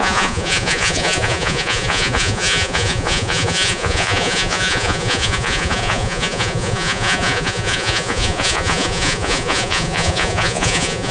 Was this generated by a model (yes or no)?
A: yes